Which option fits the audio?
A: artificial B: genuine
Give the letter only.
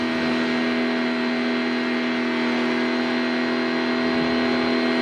B